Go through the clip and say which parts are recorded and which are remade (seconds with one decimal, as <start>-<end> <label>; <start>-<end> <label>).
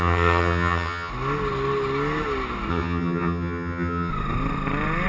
0.0-1.1 remade; 1.1-2.7 recorded; 2.7-4.1 remade; 4.1-5.1 recorded